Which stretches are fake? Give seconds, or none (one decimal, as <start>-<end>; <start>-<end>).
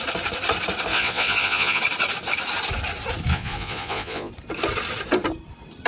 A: 0.9-1.8; 3.3-4.3